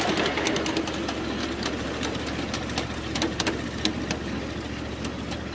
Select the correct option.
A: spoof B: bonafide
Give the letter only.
B